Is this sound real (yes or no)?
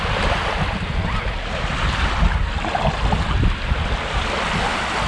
yes